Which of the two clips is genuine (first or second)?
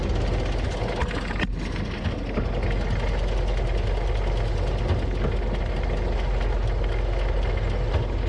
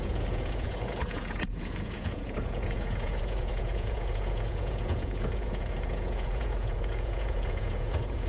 first